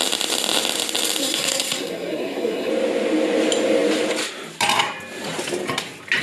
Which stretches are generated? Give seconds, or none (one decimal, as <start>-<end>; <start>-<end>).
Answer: 1.2-2.7